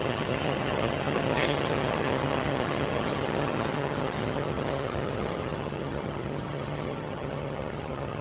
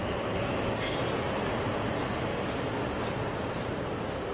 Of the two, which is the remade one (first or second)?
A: first